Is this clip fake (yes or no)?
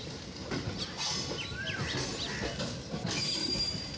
no